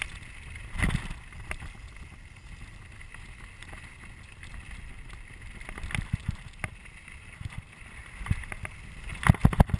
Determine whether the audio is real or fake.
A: real